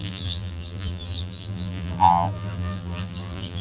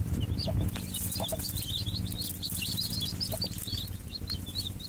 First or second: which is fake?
first